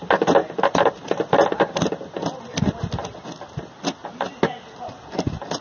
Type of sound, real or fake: real